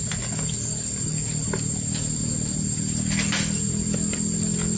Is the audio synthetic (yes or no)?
no